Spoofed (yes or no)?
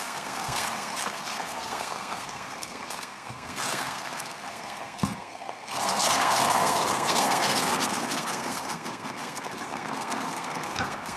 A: yes